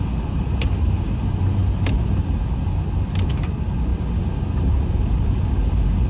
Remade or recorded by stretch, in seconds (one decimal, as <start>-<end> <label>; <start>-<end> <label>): 0.0-6.1 recorded